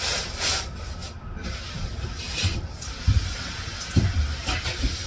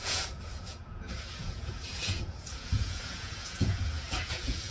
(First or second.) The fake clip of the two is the second